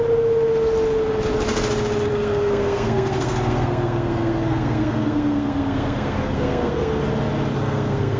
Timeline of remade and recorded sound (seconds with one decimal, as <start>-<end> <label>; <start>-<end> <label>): 0.0-2.1 recorded; 2.1-7.0 remade; 7.0-7.5 recorded; 7.5-8.2 remade